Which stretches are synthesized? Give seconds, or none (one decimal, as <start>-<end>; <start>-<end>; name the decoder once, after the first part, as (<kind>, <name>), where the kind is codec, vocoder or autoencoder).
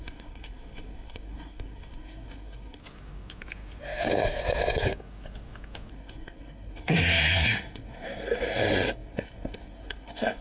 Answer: 0.0-2.8 (codec, SNAC); 5.9-10.4